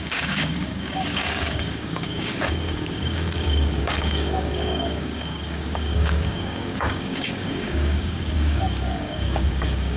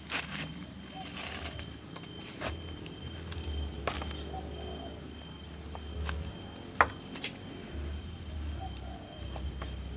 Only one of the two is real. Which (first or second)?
second